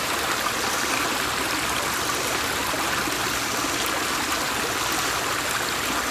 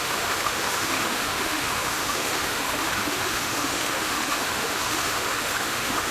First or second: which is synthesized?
second